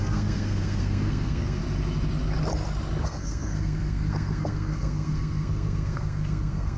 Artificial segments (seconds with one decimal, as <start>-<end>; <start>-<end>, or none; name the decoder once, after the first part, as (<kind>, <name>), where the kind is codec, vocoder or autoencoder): 0.0-1.6 (codec, SNAC); 3.0-6.8